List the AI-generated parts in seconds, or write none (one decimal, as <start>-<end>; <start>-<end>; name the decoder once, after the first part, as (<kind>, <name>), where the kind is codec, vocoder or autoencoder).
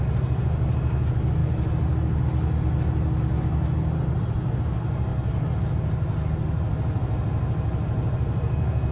none